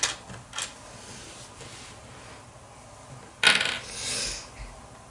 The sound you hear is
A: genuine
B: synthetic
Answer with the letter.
A